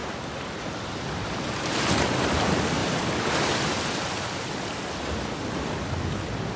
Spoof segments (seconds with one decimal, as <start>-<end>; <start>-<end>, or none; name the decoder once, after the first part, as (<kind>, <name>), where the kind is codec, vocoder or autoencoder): 2.8-3.5 (vocoder, BigVGAN v2)